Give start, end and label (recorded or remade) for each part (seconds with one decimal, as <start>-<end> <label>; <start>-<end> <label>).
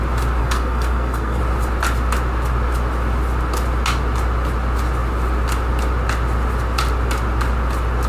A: 0.0-0.4 recorded; 0.4-1.4 remade; 1.4-8.1 recorded